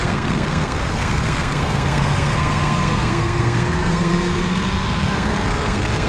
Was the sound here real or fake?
fake